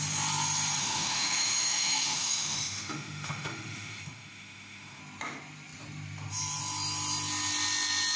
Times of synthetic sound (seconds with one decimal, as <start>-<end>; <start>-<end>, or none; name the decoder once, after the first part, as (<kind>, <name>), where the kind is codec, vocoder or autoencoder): 0.8-5.0 (autoencoder, DAC-VAE)